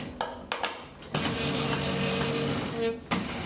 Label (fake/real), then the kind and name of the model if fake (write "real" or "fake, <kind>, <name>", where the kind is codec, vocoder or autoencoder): real